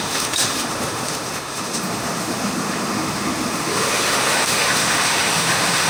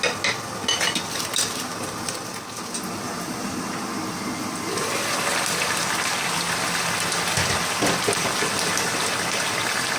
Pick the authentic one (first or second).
second